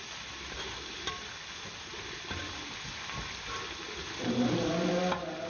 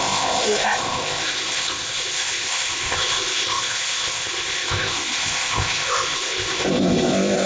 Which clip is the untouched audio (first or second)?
first